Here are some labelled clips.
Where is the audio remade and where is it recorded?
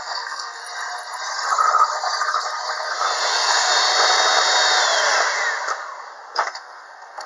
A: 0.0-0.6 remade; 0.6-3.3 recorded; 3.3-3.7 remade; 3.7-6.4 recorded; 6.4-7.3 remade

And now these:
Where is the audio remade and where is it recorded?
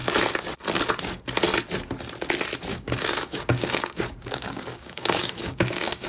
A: 0.0-2.7 recorded; 2.7-6.1 remade